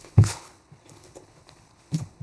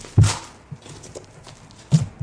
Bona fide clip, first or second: second